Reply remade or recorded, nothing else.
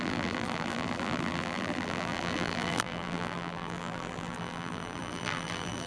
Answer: remade